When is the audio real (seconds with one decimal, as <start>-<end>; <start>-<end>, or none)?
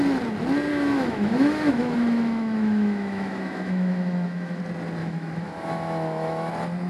0.0-0.7; 4.6-5.0; 6.5-6.9